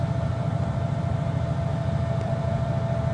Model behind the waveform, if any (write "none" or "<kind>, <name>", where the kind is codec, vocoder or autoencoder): vocoder, BigVGAN v2